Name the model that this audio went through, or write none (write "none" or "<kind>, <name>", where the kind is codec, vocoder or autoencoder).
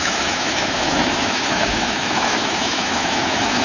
autoencoder, DAC-VAE